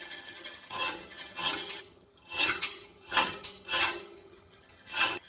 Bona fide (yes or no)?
no